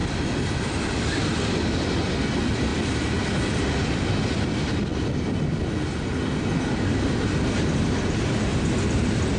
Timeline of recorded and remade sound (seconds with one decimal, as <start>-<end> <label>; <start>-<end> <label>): 0.0-8.5 recorded; 8.5-9.0 remade; 9.0-9.4 recorded